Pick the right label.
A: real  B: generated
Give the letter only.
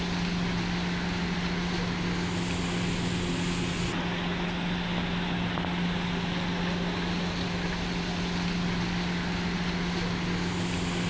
A